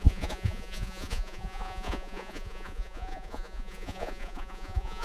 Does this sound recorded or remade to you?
remade